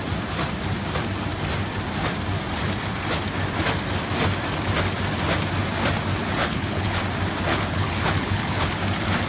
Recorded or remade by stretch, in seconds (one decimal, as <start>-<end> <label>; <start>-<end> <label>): 0.0-6.4 recorded; 6.4-7.0 remade; 7.0-7.5 recorded; 7.5-8.8 remade; 8.8-9.3 recorded